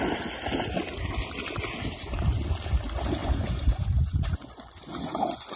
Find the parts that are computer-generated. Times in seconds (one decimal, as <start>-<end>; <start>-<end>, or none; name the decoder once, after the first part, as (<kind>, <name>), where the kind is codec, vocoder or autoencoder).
3.2-5.6 (vocoder, Vocos)